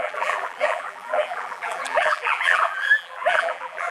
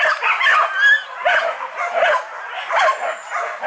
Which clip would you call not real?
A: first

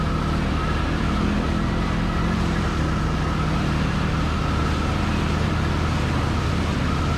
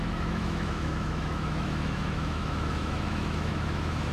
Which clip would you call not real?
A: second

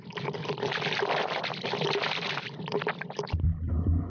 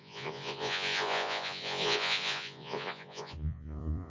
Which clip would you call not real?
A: second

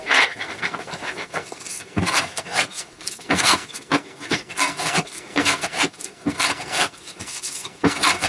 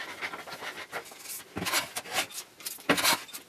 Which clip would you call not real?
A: first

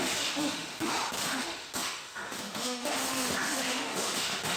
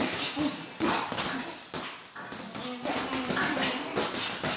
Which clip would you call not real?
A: first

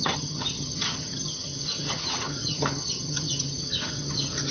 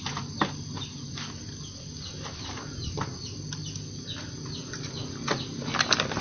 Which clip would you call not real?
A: first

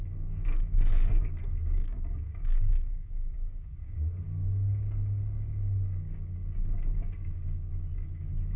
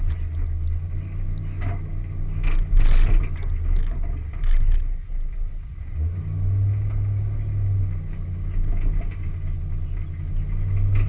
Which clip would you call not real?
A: first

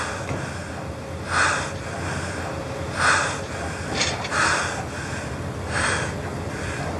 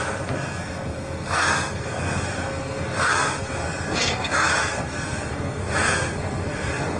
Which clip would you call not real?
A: second